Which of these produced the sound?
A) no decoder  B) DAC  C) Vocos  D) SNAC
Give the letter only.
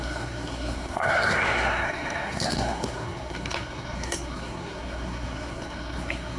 D